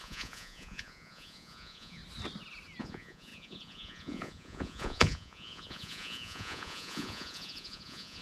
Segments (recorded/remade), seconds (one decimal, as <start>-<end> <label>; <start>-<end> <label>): 0.0-2.0 remade; 2.0-2.8 recorded; 2.8-8.2 remade